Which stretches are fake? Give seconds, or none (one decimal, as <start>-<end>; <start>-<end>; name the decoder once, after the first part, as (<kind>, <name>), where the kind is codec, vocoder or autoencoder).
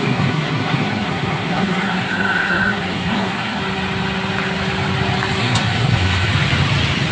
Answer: 0.0-3.6 (codec, SNAC); 5.4-6.3